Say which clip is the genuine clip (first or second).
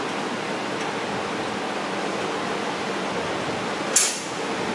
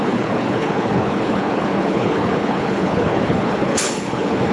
first